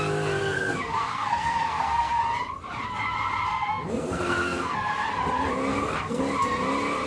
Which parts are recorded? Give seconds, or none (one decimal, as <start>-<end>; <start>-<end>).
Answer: 0.0-0.4; 2.2-3.5; 4.9-5.7; 6.2-7.1